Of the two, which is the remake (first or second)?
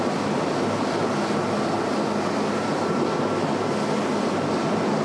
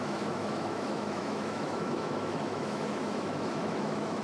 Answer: second